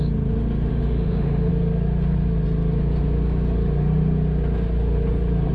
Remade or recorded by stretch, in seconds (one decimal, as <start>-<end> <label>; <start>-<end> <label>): 0.0-0.7 recorded; 0.7-1.5 remade; 1.5-5.5 recorded